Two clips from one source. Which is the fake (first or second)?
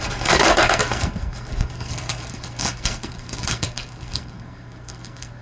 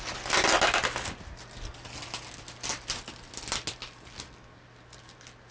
first